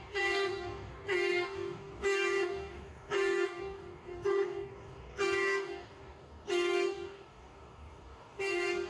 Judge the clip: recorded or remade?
remade